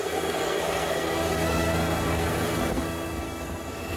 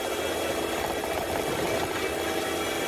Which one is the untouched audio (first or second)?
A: second